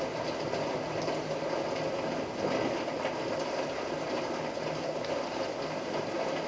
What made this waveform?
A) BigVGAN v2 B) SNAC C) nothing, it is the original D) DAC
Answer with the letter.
C